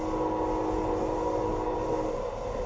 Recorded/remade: recorded